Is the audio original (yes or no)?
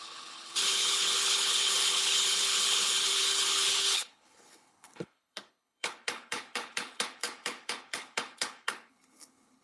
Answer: no